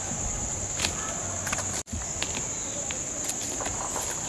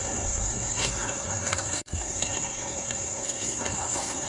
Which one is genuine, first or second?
first